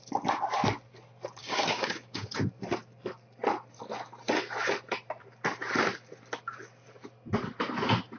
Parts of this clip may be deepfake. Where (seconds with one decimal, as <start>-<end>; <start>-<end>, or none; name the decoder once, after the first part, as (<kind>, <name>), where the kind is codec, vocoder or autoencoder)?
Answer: 1.4-2.4 (codec, DAC)